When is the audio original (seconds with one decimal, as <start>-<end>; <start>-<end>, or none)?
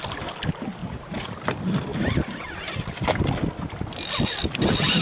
0.0-0.8; 1.4-5.0